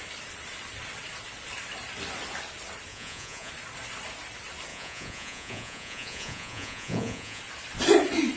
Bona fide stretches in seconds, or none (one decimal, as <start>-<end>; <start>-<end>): 0.0-2.9; 3.5-4.7; 7.4-8.4